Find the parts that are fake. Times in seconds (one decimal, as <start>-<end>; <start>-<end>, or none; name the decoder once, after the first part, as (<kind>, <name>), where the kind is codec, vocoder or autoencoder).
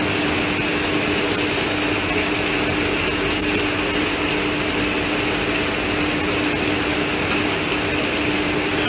none